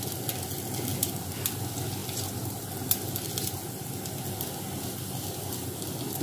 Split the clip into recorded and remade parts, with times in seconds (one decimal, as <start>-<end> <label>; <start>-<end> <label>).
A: 0.0-6.2 recorded